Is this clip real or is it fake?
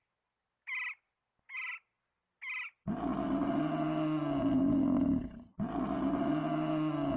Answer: real